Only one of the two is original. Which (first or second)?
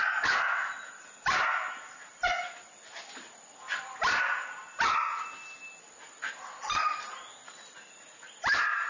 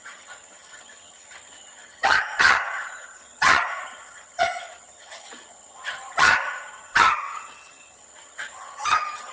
first